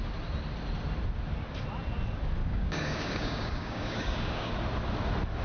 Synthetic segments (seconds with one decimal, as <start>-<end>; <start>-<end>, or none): 2.4-4.5